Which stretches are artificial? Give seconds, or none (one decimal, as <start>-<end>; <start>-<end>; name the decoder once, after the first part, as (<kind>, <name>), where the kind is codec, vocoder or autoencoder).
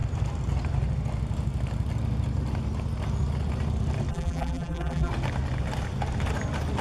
4.1-5.1 (vocoder, BigVGAN v2)